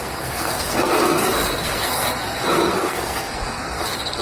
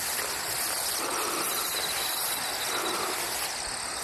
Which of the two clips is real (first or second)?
second